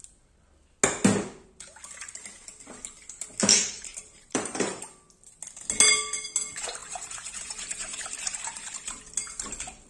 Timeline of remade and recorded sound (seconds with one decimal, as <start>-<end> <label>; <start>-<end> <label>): 0.0-3.6 recorded; 3.6-4.8 remade; 4.8-6.8 recorded; 6.8-9.0 remade; 9.0-9.9 recorded